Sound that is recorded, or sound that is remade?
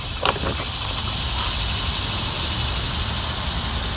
recorded